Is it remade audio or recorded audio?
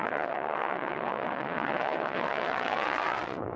remade